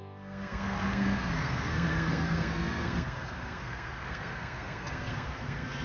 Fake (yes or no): yes